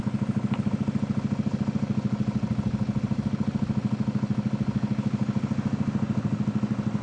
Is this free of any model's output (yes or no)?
yes